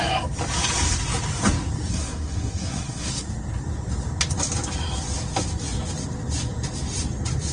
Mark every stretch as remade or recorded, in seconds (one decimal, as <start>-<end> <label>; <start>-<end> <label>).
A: 0.0-1.9 recorded; 1.9-3.1 remade; 3.1-7.5 recorded